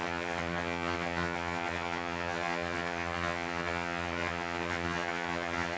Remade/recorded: remade